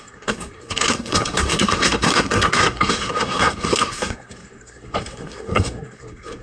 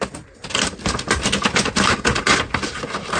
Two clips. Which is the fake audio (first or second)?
first